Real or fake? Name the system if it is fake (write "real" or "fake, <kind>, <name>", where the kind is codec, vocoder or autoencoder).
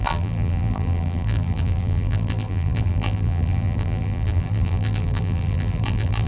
fake, vocoder, BigVGAN v2